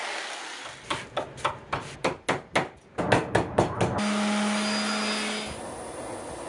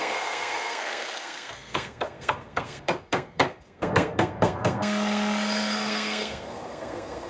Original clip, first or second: first